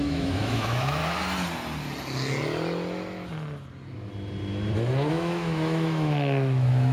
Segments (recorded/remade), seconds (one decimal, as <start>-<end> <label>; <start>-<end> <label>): 0.0-1.0 remade; 1.0-5.1 recorded; 5.1-6.9 remade